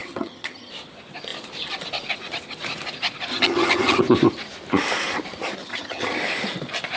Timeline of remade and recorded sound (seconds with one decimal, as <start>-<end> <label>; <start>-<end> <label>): 0.0-0.7 remade; 0.7-3.3 recorded; 3.3-4.0 remade; 4.0-5.6 recorded; 5.6-6.2 remade; 6.2-7.0 recorded